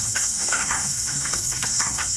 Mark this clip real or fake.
fake